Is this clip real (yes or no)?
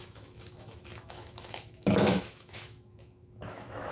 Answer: no